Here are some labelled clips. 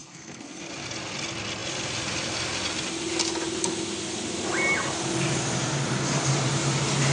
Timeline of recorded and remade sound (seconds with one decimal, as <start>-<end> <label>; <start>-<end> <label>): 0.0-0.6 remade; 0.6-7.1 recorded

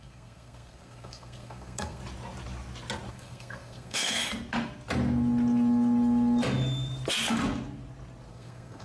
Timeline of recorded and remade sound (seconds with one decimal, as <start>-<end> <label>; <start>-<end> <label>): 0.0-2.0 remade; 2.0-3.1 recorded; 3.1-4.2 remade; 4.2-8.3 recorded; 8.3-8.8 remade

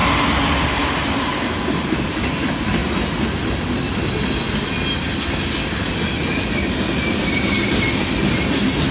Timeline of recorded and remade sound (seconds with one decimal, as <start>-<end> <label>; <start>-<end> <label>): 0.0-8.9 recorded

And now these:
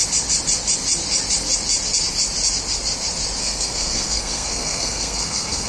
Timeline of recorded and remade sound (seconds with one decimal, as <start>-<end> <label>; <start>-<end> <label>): 0.0-3.4 recorded; 3.4-5.7 remade